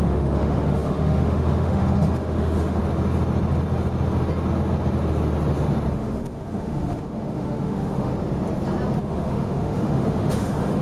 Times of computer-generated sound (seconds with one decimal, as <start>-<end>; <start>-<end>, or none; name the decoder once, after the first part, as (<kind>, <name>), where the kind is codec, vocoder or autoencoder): 0.0-2.8 (autoencoder, DAC-VAE); 5.9-8.1; 9.0-10.8